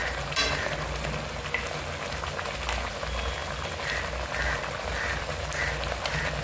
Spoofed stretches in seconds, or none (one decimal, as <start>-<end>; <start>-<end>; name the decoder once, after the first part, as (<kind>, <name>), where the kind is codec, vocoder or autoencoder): 3.4-6.4 (vocoder, BigVGAN v2)